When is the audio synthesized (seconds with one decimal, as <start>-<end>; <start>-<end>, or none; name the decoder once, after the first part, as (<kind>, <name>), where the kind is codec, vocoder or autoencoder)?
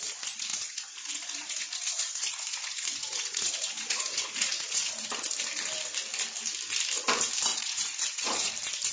0.5-4.9 (vocoder, Vocos); 7.5-8.5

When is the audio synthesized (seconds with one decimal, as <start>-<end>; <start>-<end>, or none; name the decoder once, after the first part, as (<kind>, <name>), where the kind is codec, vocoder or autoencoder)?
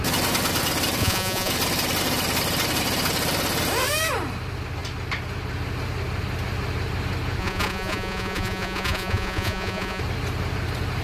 1.0-1.5 (vocoder, Vocos); 7.4-10.0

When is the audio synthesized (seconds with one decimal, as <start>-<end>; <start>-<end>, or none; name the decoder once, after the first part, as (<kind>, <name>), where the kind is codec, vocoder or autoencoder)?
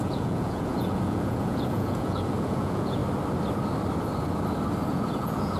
0.0-3.0 (vocoder, Vocos); 4.9-5.6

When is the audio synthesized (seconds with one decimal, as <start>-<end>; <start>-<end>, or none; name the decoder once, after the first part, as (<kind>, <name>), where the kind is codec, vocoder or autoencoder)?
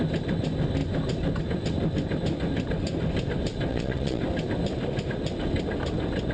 3.7-4.2 (vocoder, Vocos)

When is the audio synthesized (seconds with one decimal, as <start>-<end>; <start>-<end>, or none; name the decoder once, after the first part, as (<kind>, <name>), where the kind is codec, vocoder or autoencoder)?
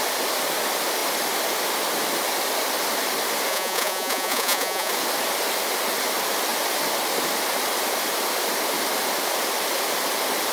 3.5-4.9 (vocoder, Vocos)